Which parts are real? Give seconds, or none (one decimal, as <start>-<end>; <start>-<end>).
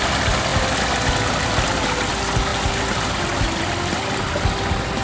0.0-5.0